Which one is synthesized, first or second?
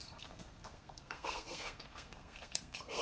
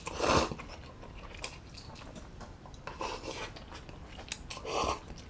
first